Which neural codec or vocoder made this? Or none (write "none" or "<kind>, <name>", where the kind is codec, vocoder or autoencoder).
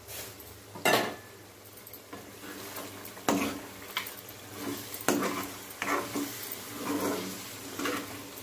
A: none